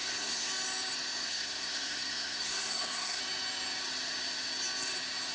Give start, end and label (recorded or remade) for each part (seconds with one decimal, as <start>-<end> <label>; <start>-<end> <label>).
0.0-0.5 remade; 0.5-1.2 recorded; 1.2-3.2 remade; 3.2-5.3 recorded